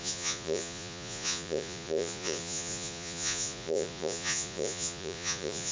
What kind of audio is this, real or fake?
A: fake